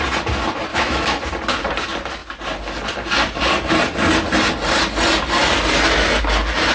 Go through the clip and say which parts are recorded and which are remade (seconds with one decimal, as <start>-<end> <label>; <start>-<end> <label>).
0.0-0.7 recorded; 0.7-1.2 remade; 1.2-6.7 recorded